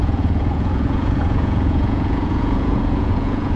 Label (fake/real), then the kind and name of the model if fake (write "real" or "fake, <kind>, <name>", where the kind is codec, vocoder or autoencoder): fake, vocoder, Vocos